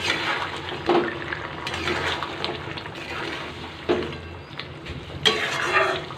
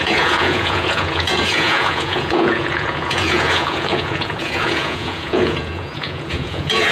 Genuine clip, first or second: first